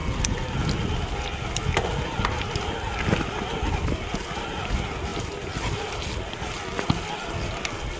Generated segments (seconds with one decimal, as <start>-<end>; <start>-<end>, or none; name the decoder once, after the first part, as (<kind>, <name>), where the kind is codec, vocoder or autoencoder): none

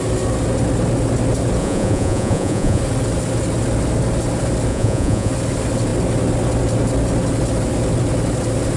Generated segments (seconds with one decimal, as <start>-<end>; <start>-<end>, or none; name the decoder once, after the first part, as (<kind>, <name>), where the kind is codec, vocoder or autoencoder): 1.6-2.8 (vocoder, Vocos); 4.7-5.3

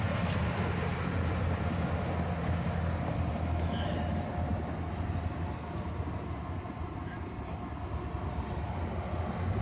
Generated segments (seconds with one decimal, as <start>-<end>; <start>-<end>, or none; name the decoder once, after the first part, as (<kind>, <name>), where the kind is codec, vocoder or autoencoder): none

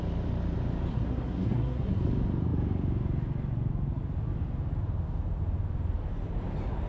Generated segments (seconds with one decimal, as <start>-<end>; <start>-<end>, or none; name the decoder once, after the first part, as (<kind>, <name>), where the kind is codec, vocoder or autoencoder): 0.9-2.0 (codec, SNAC)

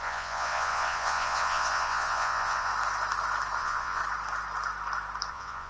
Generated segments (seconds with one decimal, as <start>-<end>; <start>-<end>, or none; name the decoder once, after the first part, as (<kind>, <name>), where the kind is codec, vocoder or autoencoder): 0.0-2.7 (vocoder, Vocos); 3.6-4.0; 5.3-5.7

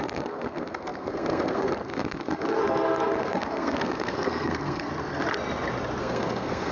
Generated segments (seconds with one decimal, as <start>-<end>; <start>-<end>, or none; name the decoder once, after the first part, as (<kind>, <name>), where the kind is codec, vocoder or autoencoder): 0.0-2.6 (codec, SNAC); 3.2-4.9; 6.0-6.7

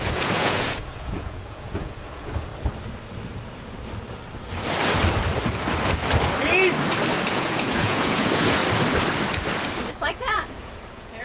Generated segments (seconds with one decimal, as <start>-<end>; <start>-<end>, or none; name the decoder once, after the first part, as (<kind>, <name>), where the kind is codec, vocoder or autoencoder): 0.0-2.5 (vocoder, Vocos); 7.3-8.6; 9.9-11.2

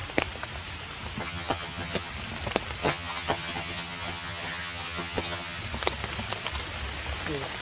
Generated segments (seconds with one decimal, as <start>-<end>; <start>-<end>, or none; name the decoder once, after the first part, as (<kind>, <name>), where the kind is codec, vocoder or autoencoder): 1.2-2.1 (vocoder, HiFi-GAN); 2.8-5.6